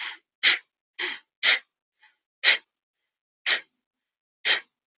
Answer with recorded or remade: recorded